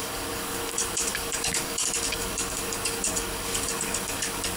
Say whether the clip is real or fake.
fake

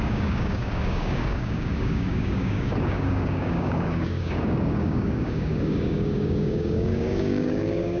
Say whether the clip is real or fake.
fake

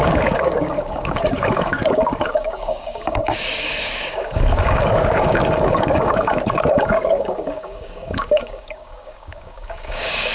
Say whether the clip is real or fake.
fake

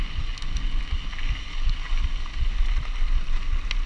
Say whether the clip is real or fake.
real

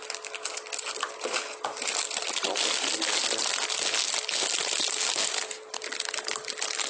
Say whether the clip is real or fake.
real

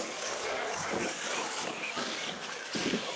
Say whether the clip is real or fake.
fake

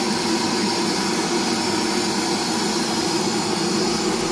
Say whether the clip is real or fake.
real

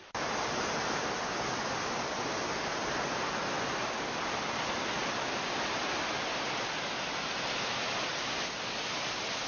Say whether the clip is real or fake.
real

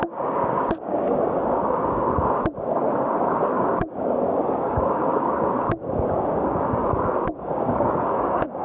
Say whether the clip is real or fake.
fake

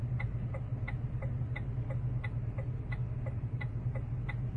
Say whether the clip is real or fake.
real